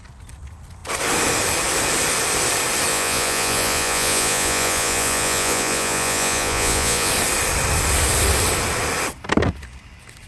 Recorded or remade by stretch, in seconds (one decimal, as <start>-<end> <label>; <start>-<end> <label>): 0.0-2.9 recorded; 2.9-7.1 remade; 7.1-10.3 recorded

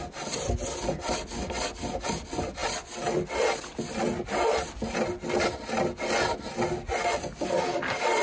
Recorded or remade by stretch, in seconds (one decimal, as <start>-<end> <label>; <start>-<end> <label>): 0.0-8.2 recorded

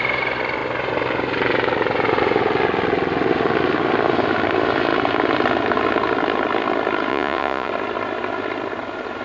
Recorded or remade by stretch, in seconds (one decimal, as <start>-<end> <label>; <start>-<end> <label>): 0.0-7.1 recorded; 7.1-7.7 remade; 7.7-9.2 recorded

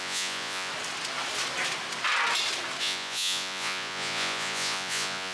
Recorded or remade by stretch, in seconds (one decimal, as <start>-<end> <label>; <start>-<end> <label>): 0.0-0.7 remade; 0.7-2.8 recorded; 2.8-5.3 remade